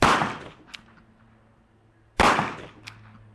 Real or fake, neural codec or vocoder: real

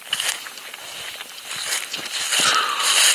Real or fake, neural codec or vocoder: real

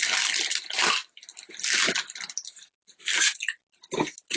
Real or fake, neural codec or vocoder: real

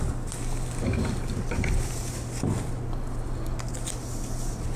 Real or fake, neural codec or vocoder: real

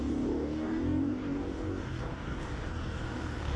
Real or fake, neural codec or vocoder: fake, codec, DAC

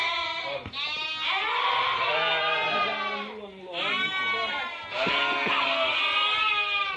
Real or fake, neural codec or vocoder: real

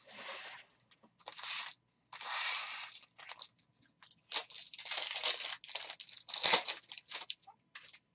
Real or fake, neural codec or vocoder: real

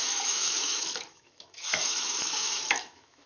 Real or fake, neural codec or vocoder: fake, autoencoder, DAC-VAE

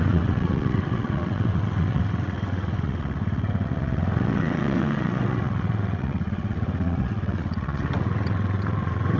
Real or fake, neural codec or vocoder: fake, vocoder, WaveNeXt